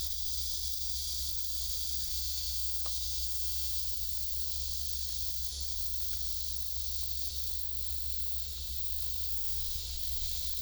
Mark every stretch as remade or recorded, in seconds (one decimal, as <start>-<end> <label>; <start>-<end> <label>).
0.0-2.1 recorded; 2.1-3.8 remade; 3.8-9.3 recorded; 9.3-9.8 remade; 9.8-10.6 recorded

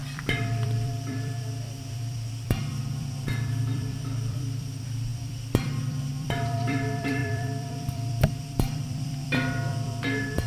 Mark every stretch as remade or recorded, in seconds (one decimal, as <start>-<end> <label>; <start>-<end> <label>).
0.0-10.5 remade

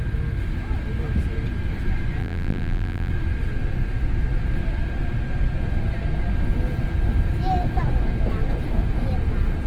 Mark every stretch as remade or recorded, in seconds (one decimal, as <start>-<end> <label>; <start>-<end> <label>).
0.0-2.2 recorded; 2.2-3.1 remade; 3.1-9.7 recorded

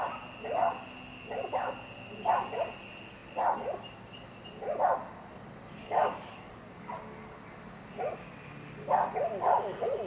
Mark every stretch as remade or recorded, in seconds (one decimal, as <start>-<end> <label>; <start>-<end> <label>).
0.0-5.8 recorded; 5.8-6.9 remade; 6.9-10.1 recorded

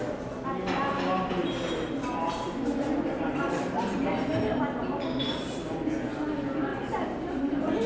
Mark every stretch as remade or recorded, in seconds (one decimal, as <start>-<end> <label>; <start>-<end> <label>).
0.0-7.9 recorded

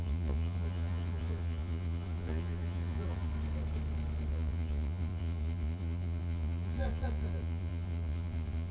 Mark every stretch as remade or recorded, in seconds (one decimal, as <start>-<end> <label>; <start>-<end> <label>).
0.0-3.3 remade; 3.3-4.3 recorded; 4.3-8.7 remade